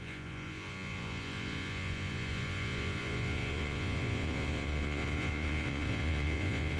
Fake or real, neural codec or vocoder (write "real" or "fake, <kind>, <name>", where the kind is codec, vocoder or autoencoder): fake, vocoder, Vocos